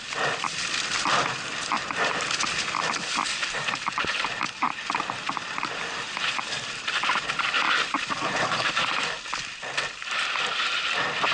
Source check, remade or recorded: remade